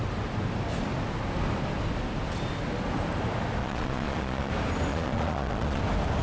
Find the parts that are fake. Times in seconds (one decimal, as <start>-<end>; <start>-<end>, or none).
3.6-4.5; 4.9-5.8